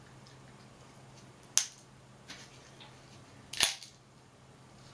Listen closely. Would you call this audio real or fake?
real